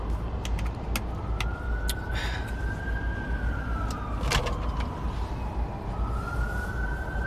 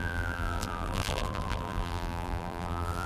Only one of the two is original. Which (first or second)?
first